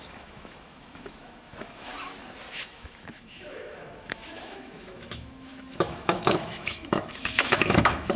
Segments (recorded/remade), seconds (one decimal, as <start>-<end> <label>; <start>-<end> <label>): 0.0-1.9 remade; 1.9-2.5 recorded; 2.5-8.2 remade